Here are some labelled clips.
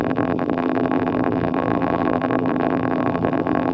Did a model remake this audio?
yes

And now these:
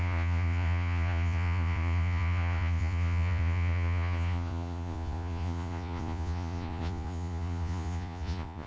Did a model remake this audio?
yes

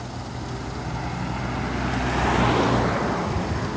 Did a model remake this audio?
no